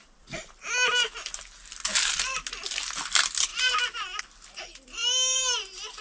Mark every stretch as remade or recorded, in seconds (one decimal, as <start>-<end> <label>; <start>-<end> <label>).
0.0-0.7 remade; 0.7-3.5 recorded; 3.5-4.2 remade; 4.2-6.0 recorded